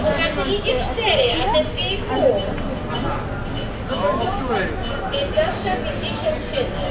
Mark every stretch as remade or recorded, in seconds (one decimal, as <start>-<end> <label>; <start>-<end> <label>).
0.0-6.9 recorded